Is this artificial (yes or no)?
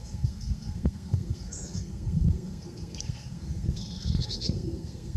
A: yes